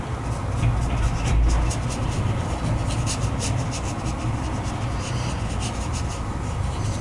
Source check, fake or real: real